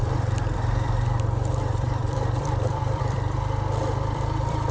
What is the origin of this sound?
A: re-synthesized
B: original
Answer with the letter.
A